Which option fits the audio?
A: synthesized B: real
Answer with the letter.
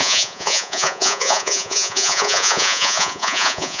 A